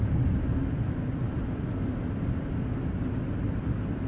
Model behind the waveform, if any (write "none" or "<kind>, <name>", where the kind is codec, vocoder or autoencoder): none